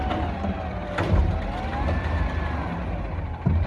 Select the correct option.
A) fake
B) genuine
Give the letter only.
B